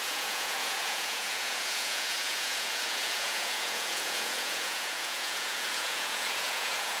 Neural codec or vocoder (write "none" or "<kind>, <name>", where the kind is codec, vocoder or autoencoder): vocoder, Vocos